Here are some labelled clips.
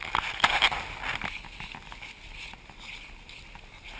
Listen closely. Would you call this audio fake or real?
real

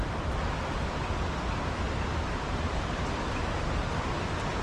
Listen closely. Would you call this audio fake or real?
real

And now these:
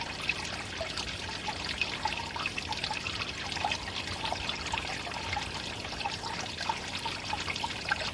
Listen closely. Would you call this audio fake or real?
real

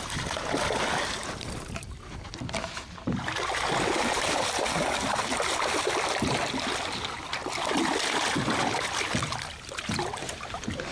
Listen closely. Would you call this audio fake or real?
real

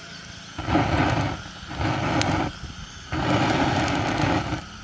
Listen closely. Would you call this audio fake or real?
real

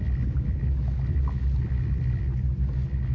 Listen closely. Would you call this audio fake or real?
real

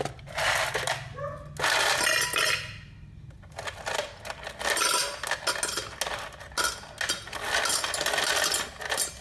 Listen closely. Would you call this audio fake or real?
real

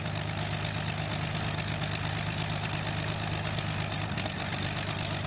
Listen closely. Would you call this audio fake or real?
real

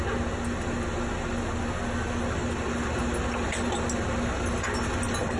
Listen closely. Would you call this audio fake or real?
real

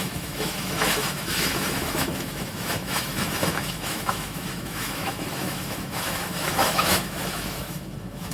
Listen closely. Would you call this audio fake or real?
fake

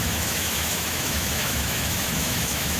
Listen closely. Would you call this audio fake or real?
fake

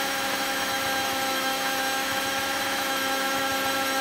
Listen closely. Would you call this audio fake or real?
fake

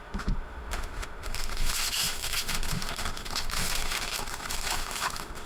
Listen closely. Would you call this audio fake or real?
fake